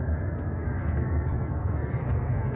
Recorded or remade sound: remade